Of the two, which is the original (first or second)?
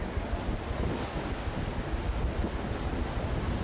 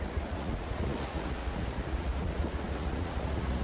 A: first